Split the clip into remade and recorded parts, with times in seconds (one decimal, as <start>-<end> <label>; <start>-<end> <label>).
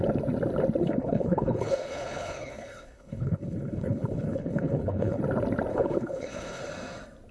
0.0-0.8 recorded; 0.8-5.2 remade; 5.2-5.7 recorded; 5.7-6.6 remade; 6.6-7.3 recorded